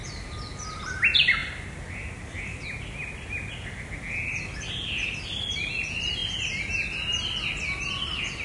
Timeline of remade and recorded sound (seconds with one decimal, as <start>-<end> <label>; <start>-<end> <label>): 0.0-8.4 recorded